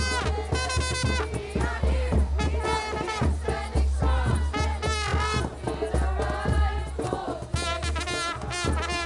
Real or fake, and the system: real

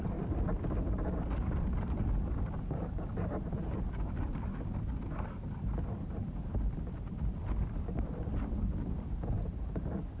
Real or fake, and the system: real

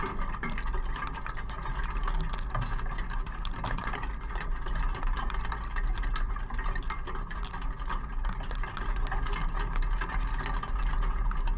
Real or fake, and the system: real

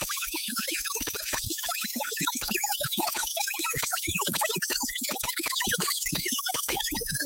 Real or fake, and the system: fake, autoencoder, DAC-VAE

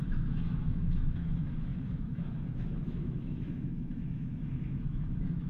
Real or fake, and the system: fake, autoencoder, DAC-VAE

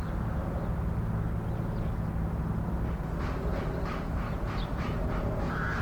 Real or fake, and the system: real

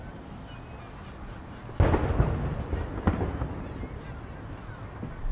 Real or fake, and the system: real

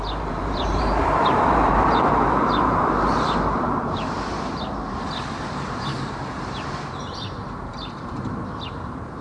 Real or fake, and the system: fake, vocoder, BigVGAN v2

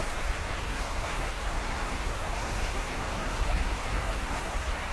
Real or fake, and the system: fake, codec, SNAC